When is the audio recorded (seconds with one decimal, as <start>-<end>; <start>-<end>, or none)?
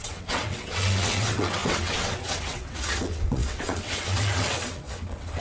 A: none